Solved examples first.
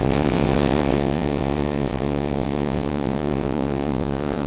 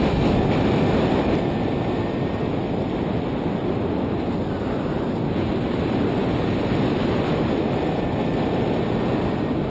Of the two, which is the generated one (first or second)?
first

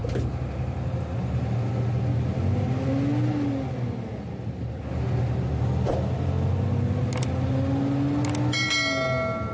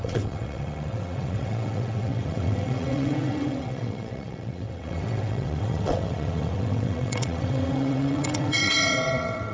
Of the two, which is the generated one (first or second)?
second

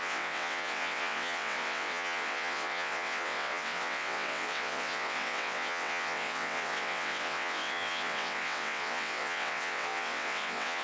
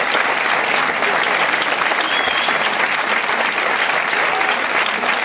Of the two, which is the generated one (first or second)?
first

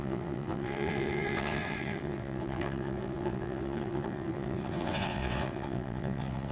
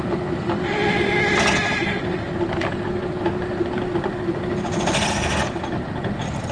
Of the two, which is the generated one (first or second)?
first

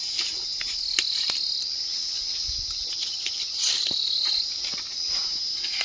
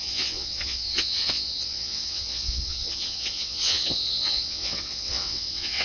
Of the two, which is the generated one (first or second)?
second